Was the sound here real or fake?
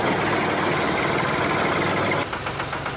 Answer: real